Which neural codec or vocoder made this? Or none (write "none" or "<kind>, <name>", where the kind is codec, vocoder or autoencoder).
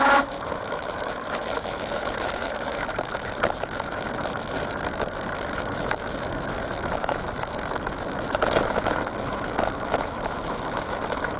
autoencoder, DAC-VAE